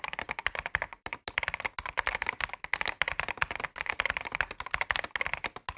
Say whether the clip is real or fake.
real